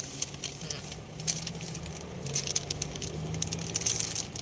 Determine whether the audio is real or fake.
real